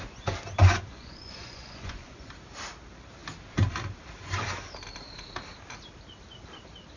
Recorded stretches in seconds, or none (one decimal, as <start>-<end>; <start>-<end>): 0.0-0.6; 2.3-7.0